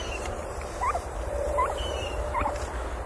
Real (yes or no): no